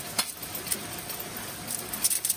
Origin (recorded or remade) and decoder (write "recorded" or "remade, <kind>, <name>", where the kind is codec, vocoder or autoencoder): recorded